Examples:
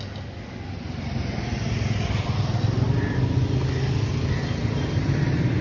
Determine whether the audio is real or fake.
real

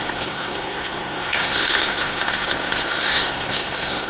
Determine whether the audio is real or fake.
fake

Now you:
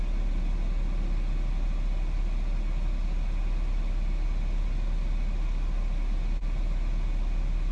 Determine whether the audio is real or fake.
real